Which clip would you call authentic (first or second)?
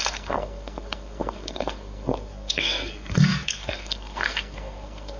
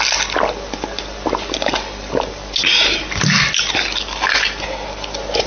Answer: second